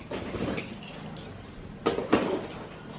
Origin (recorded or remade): recorded